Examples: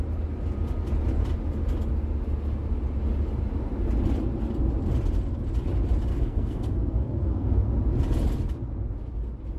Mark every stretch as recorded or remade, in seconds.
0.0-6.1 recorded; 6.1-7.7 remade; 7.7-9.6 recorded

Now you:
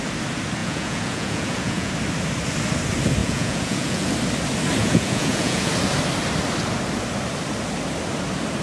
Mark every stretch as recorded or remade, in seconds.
0.0-0.6 recorded; 0.6-1.9 remade; 1.9-3.2 recorded; 3.2-4.1 remade; 4.1-4.8 recorded; 4.8-5.7 remade; 5.7-8.6 recorded

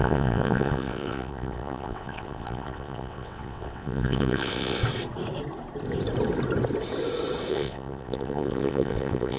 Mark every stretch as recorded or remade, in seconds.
0.0-4.8 remade; 4.8-7.5 recorded; 7.5-9.4 remade

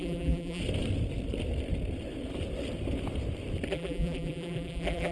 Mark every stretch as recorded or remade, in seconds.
0.0-0.6 remade; 0.6-3.7 recorded; 3.7-5.1 remade

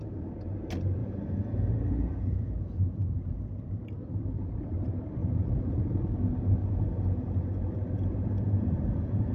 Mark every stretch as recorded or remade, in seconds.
0.0-1.0 recorded; 1.0-3.6 remade; 3.6-5.2 recorded; 5.2-5.8 remade; 5.8-6.6 recorded; 6.6-9.3 remade

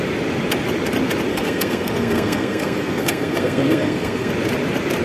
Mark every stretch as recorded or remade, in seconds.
0.0-1.3 recorded; 1.3-4.3 remade; 4.3-5.0 recorded

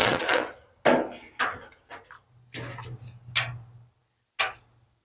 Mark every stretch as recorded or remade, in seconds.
0.0-0.5 remade; 0.5-5.0 recorded